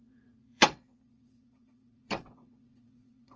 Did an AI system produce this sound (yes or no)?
yes